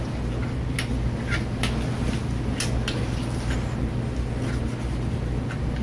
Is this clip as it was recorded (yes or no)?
yes